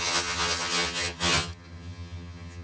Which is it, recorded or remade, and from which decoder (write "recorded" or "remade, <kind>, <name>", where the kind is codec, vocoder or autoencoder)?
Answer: remade, vocoder, HiFi-GAN